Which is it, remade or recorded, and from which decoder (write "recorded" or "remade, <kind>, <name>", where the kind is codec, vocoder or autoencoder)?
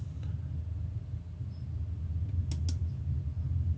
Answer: recorded